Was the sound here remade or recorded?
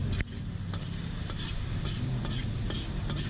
recorded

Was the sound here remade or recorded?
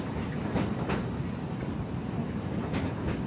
recorded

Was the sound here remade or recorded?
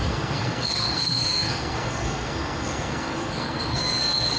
remade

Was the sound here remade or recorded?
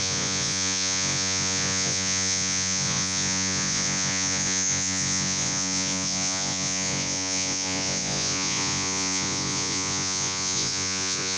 remade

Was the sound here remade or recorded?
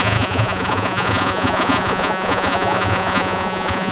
remade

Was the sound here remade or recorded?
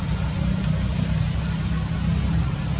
recorded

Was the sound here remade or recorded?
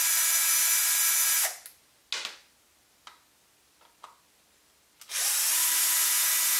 recorded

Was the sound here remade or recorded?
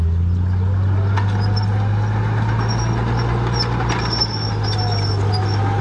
recorded